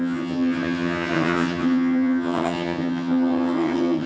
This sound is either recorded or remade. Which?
remade